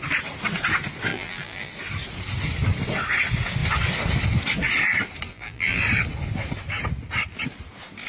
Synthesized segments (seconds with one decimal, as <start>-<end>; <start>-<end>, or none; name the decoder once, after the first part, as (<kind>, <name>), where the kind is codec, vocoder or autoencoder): 1.1-1.7 (vocoder, BigVGAN v2); 5.3-5.8